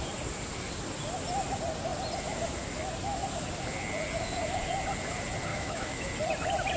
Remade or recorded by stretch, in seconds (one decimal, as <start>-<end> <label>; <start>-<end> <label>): 0.0-5.5 recorded; 5.5-6.1 remade; 6.1-6.8 recorded